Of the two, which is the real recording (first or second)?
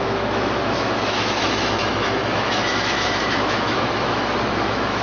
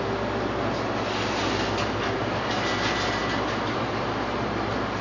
second